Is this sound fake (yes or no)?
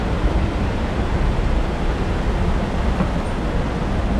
no